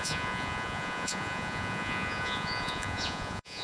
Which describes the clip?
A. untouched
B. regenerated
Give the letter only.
B